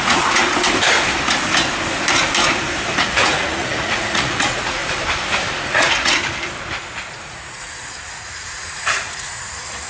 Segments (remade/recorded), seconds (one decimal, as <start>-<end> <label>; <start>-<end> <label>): 0.0-0.4 remade; 0.4-3.0 recorded; 3.0-4.8 remade; 4.8-5.5 recorded; 5.5-6.2 remade; 6.2-7.1 recorded; 7.1-9.9 remade